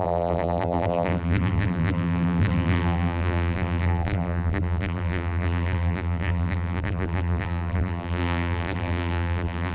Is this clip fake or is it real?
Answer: fake